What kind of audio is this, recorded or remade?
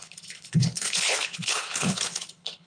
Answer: remade